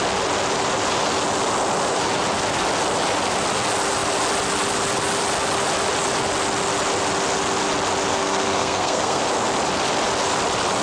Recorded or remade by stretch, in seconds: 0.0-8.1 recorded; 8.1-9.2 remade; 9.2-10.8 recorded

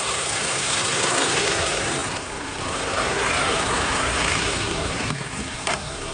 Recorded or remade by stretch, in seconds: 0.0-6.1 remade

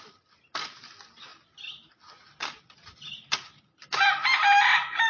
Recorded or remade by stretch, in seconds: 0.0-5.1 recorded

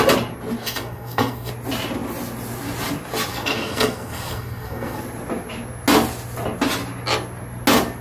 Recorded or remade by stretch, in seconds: 0.0-0.6 recorded; 0.6-1.5 remade; 1.5-3.3 recorded; 3.3-5.0 remade; 5.0-8.0 recorded

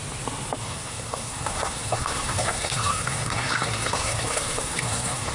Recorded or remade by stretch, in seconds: 0.0-0.6 recorded; 0.6-5.3 remade

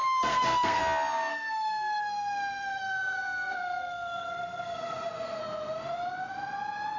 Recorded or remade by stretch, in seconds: 0.0-0.8 remade; 0.8-1.3 recorded; 1.3-5.4 remade; 5.4-7.0 recorded

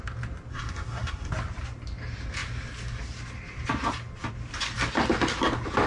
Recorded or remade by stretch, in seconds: 0.0-0.5 recorded; 0.5-1.3 remade; 1.3-5.9 recorded

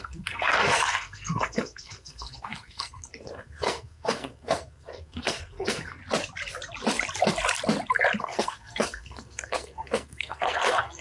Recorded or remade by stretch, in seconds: 0.0-6.0 remade; 6.0-8.2 recorded; 8.2-11.0 remade